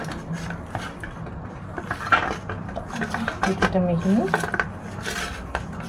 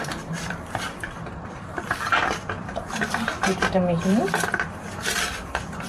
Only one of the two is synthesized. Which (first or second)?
second